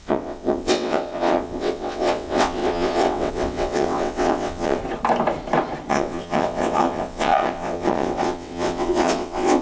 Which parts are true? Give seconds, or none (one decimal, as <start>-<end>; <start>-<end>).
4.8-5.9